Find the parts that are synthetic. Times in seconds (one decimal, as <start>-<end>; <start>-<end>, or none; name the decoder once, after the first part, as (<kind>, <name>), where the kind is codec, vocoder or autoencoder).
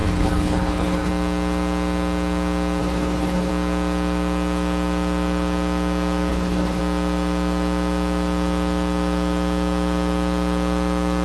0.0-1.1 (codec, HILCodec); 2.8-3.5; 6.3-6.8